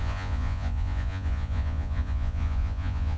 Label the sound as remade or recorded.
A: remade